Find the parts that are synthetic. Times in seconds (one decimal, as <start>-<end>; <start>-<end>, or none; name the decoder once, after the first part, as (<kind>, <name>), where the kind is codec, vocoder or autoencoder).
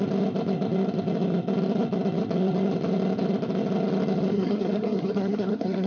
4.3-5.9 (codec, SNAC)